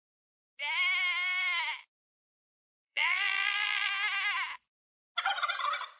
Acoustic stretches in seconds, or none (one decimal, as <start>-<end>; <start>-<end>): 0.0-2.3; 3.9-6.0